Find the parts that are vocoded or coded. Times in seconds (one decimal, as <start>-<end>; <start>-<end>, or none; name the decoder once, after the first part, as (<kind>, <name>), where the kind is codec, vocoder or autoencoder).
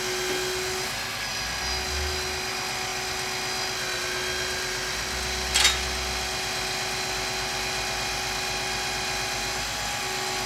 none